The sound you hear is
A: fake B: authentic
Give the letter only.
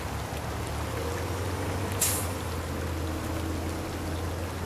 B